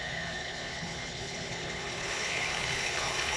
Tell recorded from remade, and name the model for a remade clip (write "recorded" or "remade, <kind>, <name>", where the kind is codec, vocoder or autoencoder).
remade, codec, HILCodec